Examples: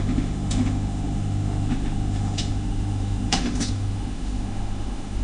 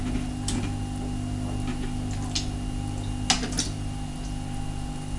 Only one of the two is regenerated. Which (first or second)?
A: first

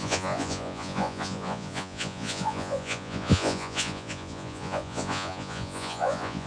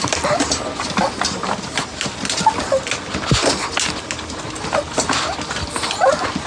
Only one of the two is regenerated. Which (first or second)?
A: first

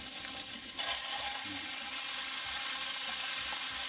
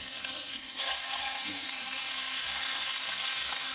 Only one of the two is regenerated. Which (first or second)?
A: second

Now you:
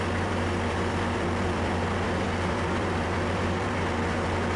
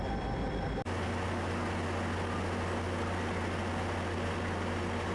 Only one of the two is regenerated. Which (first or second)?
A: first